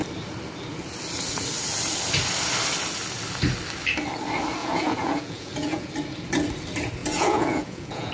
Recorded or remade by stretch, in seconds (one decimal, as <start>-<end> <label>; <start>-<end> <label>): 0.0-4.6 recorded; 4.6-5.9 remade; 5.9-7.0 recorded; 7.0-8.1 remade